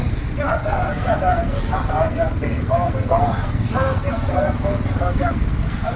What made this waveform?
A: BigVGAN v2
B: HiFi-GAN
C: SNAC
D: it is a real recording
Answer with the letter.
C